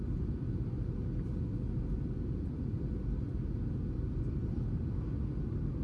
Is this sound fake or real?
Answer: real